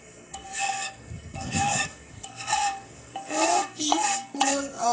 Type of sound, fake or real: fake